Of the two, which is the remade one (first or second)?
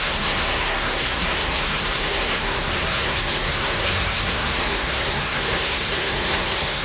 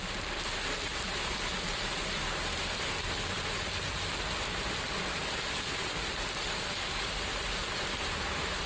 first